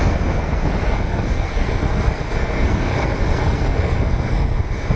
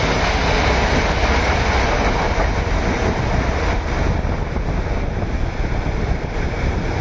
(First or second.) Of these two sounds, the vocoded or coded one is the first